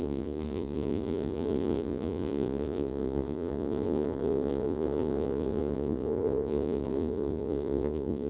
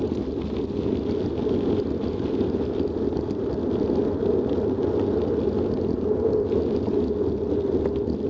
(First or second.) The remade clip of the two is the first